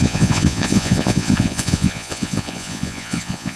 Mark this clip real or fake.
fake